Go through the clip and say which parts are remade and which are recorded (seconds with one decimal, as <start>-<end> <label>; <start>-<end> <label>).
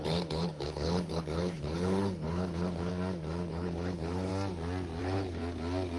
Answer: 0.0-2.9 remade; 2.9-3.5 recorded; 3.5-4.3 remade; 4.3-5.0 recorded; 5.0-5.4 remade; 5.4-6.0 recorded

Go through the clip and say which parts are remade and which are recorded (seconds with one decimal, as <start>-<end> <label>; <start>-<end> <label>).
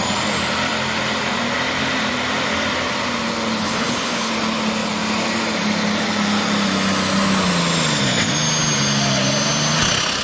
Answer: 0.0-3.6 recorded; 3.6-4.3 remade; 4.3-10.2 recorded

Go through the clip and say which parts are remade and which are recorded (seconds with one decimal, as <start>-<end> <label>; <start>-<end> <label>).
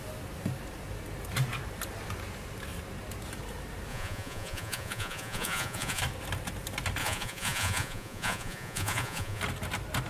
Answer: 0.0-3.9 recorded; 3.9-6.0 remade; 6.0-7.0 recorded; 7.0-9.4 remade; 9.4-10.1 recorded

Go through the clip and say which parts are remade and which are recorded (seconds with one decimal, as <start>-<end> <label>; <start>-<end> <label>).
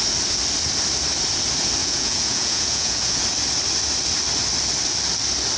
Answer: 0.0-1.8 recorded; 1.8-3.2 remade; 3.2-5.6 recorded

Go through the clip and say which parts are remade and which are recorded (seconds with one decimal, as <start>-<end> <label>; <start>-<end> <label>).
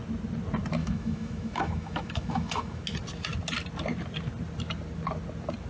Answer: 0.0-0.8 recorded; 0.8-2.8 remade; 2.8-5.7 recorded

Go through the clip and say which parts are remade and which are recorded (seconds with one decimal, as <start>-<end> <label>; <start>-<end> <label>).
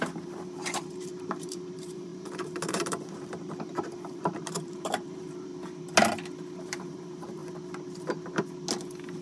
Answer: 0.0-5.5 remade; 5.5-6.6 recorded; 6.6-7.4 remade; 7.4-9.2 recorded